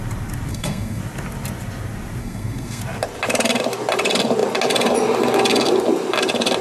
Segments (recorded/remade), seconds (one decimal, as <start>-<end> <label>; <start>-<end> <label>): 0.0-0.5 recorded; 0.5-1.0 remade; 1.0-2.2 recorded; 2.2-2.8 remade; 2.8-6.6 recorded